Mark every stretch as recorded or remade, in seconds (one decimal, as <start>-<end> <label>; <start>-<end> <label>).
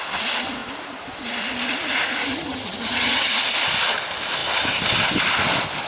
0.0-2.2 recorded; 2.2-3.3 remade; 3.3-5.9 recorded